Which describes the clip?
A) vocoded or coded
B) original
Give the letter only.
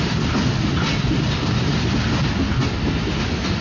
B